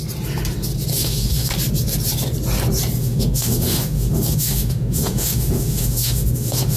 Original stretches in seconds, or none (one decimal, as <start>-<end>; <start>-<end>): 0.0-0.9; 1.5-3.0